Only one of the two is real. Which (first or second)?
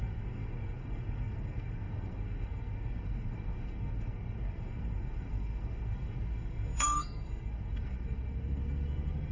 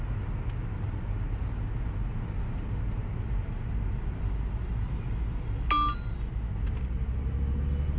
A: second